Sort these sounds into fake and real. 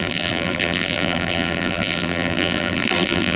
fake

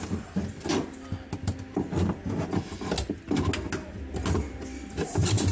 real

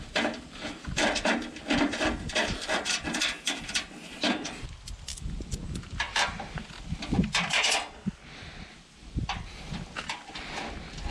real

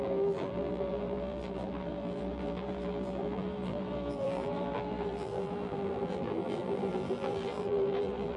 fake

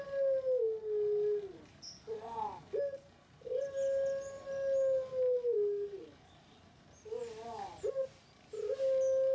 real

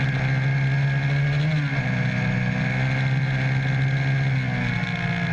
real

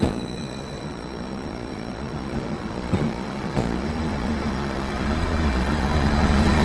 fake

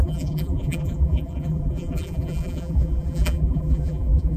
fake